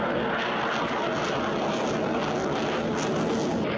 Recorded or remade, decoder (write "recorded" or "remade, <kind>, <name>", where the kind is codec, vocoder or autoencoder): recorded